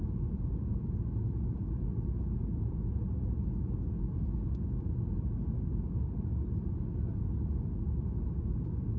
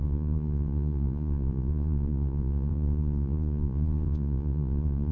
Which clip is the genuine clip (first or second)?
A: first